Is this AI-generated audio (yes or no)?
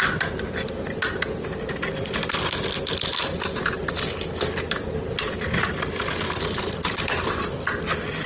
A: no